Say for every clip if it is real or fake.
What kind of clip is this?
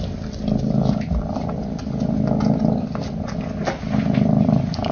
real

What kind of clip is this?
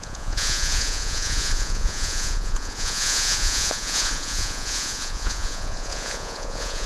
fake